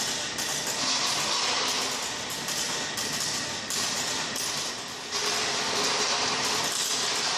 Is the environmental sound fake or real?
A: real